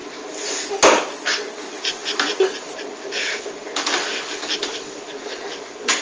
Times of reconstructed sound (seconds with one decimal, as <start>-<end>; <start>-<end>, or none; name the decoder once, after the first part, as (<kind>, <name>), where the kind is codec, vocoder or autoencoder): none